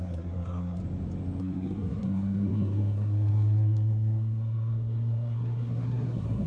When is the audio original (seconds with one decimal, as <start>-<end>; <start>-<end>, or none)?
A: 0.8-1.4